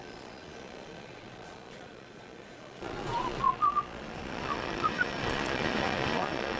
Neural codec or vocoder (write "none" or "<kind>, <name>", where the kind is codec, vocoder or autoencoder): vocoder, Vocos